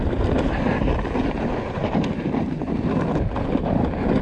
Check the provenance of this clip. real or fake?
real